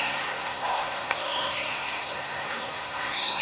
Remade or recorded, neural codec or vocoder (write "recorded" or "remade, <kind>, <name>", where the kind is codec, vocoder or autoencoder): remade, codec, SNAC